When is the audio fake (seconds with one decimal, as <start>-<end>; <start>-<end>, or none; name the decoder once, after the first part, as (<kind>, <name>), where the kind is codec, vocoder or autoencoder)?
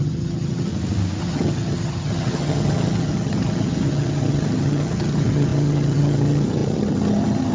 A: 0.0-0.7 (vocoder, HiFi-GAN); 1.2-7.5